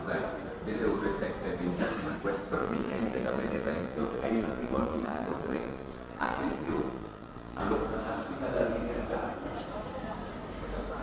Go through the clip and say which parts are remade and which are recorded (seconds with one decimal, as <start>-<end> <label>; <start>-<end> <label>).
0.0-2.6 recorded; 2.6-7.6 remade; 7.6-11.0 recorded